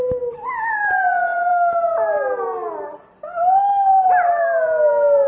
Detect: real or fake real